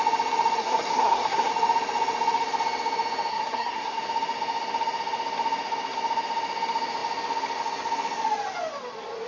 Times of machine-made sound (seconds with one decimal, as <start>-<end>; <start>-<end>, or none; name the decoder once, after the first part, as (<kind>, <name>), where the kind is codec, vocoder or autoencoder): 0.6-1.5 (codec, SNAC); 3.3-4.0